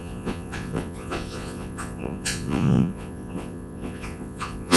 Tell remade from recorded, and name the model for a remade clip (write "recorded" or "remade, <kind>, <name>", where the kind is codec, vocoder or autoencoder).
remade, vocoder, Vocos